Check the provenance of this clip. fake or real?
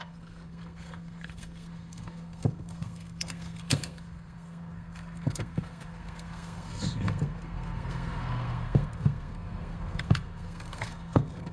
fake